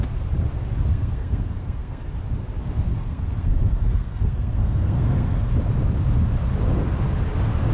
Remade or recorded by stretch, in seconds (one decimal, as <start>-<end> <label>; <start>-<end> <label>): 0.0-0.9 recorded; 0.9-2.1 remade; 2.1-2.9 recorded; 2.9-5.5 remade; 5.5-7.7 recorded